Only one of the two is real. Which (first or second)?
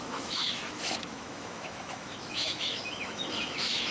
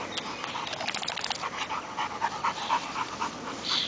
second